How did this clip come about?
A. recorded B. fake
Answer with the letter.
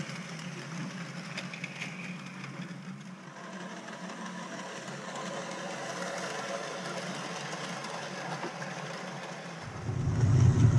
A